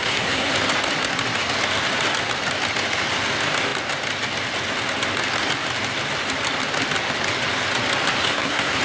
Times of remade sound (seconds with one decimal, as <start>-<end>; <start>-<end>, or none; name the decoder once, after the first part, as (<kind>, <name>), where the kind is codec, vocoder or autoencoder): 0.0-0.5 (codec, SNAC); 8.2-8.8